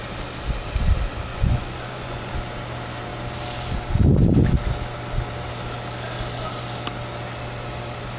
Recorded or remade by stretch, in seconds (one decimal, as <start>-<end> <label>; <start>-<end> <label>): 0.0-1.3 recorded; 1.3-2.3 remade; 2.3-8.2 recorded